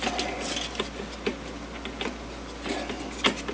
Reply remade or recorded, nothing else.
recorded